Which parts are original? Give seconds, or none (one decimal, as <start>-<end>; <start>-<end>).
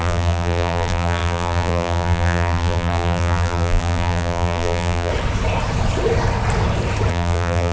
5.1-7.1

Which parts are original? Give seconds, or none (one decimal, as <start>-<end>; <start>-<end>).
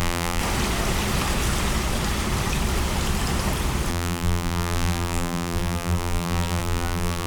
0.4-3.9